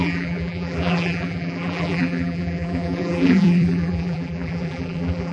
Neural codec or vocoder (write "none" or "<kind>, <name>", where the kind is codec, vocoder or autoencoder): vocoder, BigVGAN v2